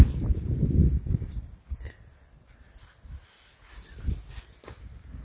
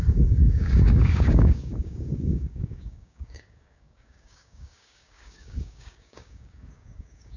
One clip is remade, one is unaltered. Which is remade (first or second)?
second